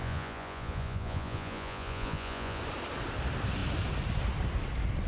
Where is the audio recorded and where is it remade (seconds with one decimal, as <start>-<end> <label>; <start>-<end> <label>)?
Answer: 0.0-2.6 remade; 2.6-5.1 recorded